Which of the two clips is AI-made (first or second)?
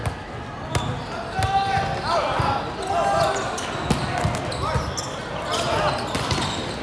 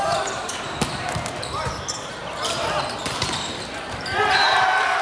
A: second